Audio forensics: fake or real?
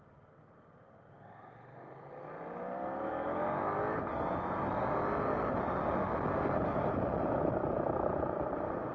real